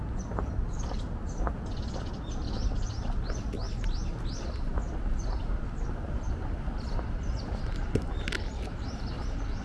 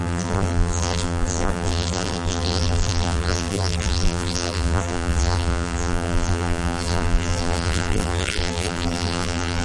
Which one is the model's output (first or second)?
second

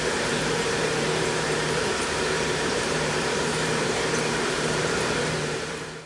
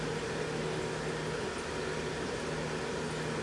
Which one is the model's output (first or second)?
first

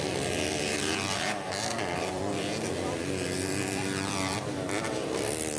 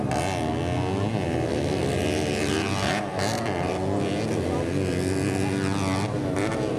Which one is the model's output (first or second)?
first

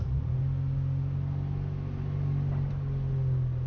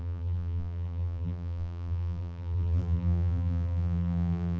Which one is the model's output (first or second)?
second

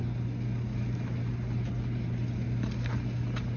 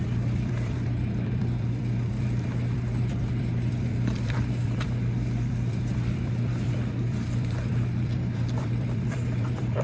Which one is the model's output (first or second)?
second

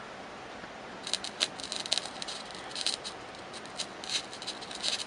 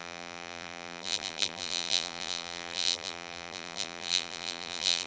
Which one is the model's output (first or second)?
second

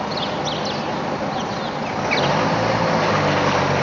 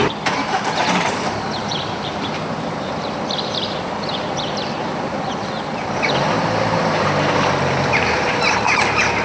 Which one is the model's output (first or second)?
second